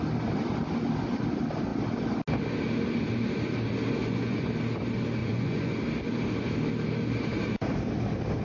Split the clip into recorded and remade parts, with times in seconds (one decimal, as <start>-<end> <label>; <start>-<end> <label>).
0.0-4.0 recorded; 4.0-4.5 remade; 4.5-5.2 recorded; 5.2-5.8 remade; 5.8-8.4 recorded